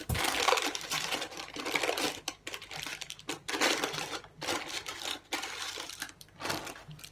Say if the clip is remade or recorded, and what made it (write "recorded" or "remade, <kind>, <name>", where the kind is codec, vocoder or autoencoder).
recorded